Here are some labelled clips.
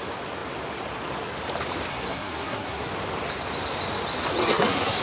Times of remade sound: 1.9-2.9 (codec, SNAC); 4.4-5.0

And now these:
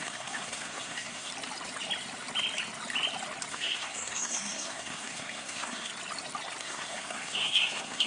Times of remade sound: 0.0-1.3 (codec, SNAC); 3.5-5.9; 6.6-8.1

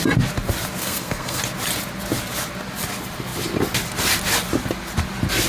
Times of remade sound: 0.8-1.4 (codec, SNAC)

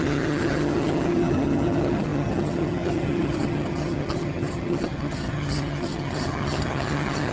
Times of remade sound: 0.0-7.3 (vocoder, HiFi-GAN)

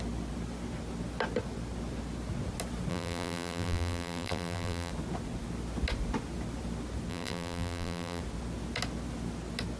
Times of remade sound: 2.9-4.9 (vocoder, BigVGAN v2); 7.1-8.2

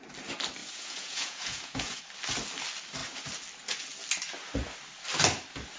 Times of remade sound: 0.6-2.0 (vocoder, Vocos)